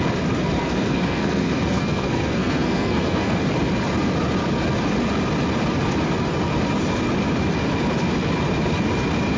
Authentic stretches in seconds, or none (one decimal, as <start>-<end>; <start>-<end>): 0.0-0.6; 3.4-9.4